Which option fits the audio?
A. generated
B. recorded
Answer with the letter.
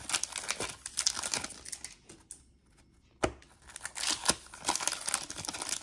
B